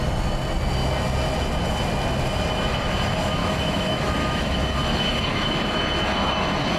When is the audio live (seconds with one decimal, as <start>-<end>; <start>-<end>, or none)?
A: 0.0-3.4; 4.5-5.3; 5.8-6.8